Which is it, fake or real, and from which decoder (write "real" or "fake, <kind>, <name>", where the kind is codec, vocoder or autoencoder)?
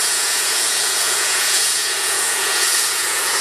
fake, vocoder, Vocos